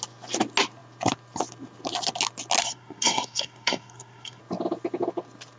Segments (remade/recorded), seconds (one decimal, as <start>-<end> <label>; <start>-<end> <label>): 0.0-2.6 recorded; 2.6-4.4 remade; 4.4-5.6 recorded